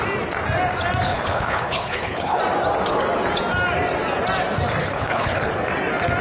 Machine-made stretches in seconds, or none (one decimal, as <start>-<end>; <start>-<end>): 1.1-2.4; 4.8-5.5